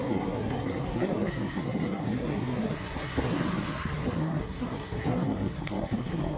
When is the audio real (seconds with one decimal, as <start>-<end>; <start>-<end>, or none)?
none